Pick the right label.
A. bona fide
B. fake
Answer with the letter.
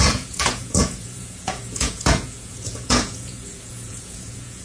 B